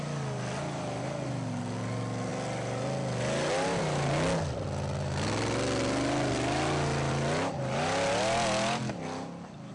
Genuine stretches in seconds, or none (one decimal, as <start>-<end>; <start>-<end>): 0.0-9.7